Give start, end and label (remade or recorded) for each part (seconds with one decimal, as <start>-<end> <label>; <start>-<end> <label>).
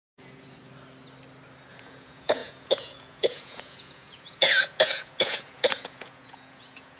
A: 0.0-0.6 remade; 0.6-1.7 recorded; 1.7-7.0 remade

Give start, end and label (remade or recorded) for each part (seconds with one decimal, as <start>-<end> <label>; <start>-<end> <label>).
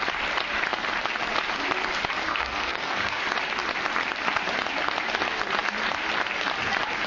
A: 0.0-2.3 recorded; 2.3-3.2 remade; 3.2-7.1 recorded